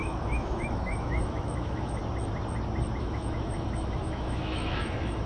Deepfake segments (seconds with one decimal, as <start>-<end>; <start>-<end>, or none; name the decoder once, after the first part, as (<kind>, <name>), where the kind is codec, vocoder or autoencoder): 0.0-2.0 (autoencoder, DAC-VAE); 3.0-5.3